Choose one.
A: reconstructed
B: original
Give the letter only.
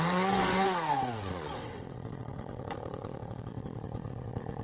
A